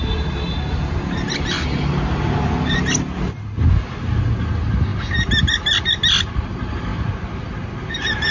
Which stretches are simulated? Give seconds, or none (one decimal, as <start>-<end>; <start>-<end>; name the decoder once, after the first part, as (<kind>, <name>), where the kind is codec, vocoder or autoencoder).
none